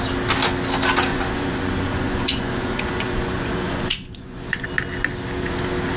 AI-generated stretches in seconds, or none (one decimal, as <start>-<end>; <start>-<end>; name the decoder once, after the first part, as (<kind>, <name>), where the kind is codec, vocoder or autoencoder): 1.1-4.7 (vocoder, Vocos)